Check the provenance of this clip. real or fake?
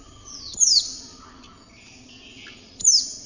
real